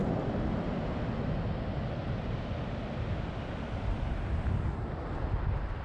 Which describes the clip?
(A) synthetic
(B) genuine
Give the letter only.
B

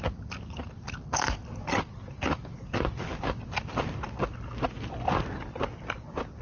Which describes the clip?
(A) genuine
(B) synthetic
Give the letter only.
A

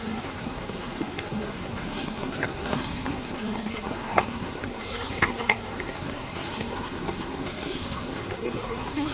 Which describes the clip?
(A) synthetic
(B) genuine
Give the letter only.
A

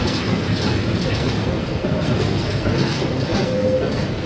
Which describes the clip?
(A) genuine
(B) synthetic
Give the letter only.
B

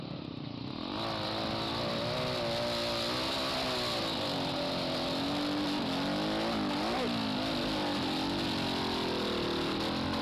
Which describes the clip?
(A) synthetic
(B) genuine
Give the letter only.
B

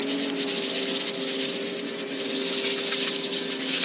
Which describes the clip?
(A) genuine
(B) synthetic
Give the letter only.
A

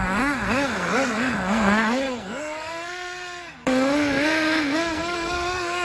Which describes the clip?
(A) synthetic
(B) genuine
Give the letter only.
A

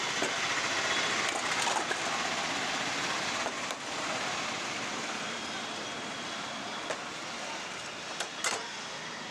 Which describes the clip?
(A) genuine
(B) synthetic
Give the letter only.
A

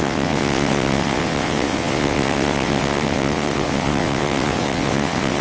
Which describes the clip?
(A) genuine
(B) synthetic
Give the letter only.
B